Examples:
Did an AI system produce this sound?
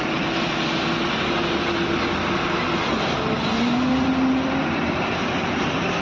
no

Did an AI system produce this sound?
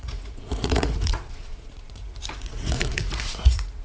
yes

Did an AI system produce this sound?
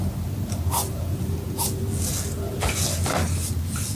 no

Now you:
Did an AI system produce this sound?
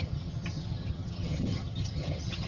yes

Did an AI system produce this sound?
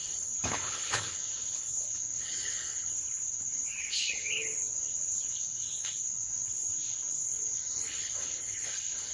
yes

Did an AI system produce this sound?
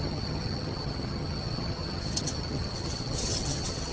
yes